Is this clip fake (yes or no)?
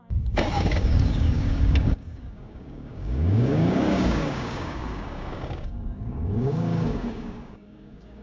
yes